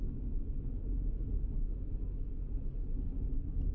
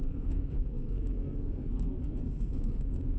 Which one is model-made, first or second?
second